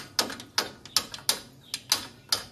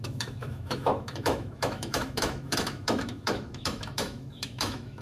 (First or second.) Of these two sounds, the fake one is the second